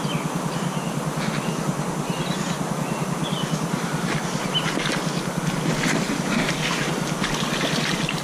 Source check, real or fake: real